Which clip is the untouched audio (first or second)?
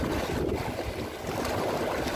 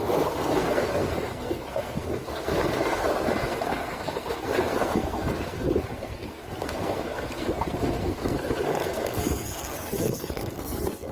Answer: first